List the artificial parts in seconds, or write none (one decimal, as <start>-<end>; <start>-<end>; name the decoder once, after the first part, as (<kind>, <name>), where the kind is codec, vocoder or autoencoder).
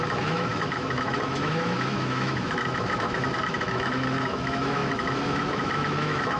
0.0-6.4 (autoencoder, DAC-VAE)